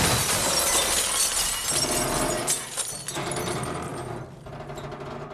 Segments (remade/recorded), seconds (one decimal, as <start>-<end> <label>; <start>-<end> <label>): 0.0-5.3 recorded